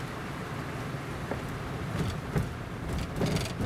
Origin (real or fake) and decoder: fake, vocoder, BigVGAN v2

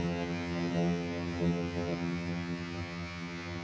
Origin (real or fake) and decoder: fake, vocoder, HiFi-GAN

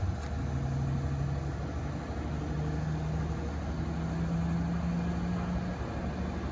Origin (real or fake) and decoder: real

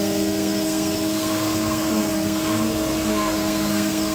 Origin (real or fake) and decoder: fake, codec, SNAC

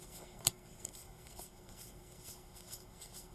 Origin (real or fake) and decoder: fake, codec, SNAC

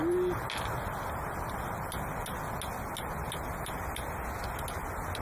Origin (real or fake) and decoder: real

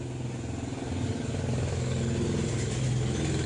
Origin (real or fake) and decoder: real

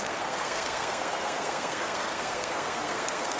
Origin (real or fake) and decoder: fake, codec, SNAC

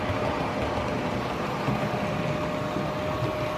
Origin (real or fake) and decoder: real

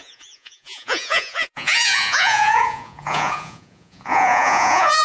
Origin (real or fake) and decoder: fake, vocoder, Vocos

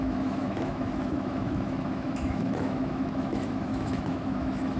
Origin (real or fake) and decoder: fake, autoencoder, DAC-VAE